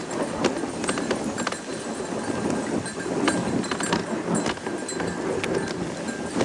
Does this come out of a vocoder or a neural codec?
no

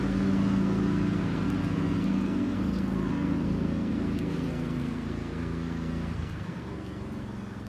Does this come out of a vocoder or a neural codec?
yes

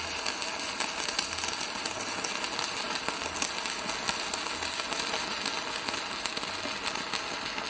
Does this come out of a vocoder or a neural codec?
no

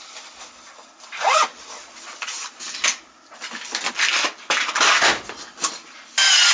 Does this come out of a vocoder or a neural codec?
no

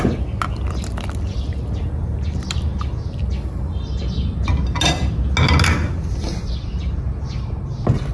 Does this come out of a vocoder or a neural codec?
no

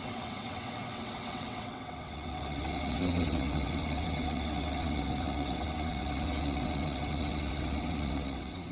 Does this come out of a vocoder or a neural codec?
yes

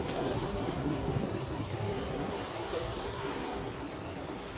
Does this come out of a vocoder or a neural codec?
yes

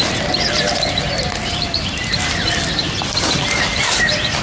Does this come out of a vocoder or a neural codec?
no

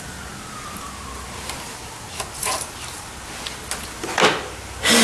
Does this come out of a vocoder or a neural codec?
no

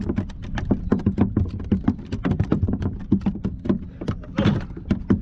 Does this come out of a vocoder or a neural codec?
no